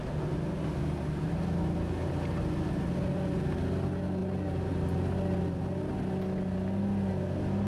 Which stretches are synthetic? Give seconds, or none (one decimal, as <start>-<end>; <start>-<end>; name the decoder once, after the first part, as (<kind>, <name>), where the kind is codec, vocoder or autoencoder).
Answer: none